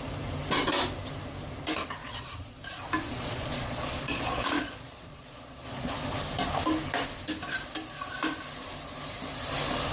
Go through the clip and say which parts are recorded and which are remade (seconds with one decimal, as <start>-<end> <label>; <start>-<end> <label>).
0.0-2.0 recorded; 2.0-2.6 remade; 2.6-3.0 recorded; 3.0-5.9 remade; 5.9-9.9 recorded